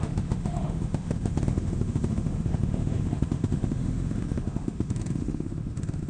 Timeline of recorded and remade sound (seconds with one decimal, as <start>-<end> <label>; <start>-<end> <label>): 0.0-6.1 remade